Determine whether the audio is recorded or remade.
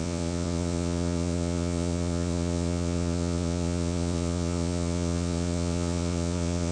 remade